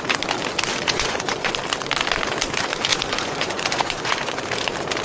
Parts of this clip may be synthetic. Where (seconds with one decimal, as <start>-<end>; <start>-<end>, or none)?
0.7-1.5; 2.9-4.4